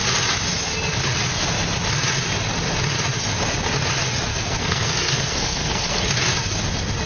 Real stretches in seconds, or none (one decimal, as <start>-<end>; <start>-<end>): 0.0-4.3; 6.1-7.1

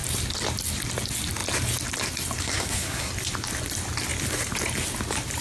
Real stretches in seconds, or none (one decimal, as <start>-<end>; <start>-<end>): 0.0-2.4; 3.1-5.4